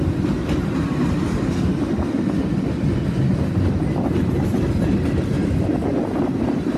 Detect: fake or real real